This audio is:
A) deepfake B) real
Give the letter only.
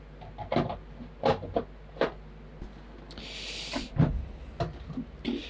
B